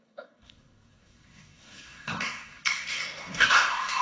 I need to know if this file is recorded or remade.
remade